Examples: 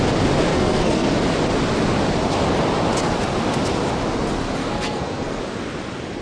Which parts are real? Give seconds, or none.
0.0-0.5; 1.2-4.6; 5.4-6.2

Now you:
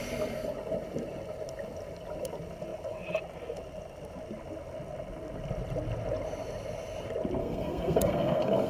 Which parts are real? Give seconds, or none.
0.0-7.4

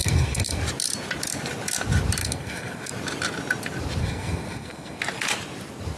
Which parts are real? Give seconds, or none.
0.6-2.2; 2.9-4.0; 5.0-6.0